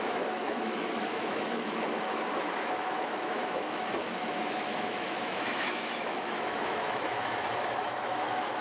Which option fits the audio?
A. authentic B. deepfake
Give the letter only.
B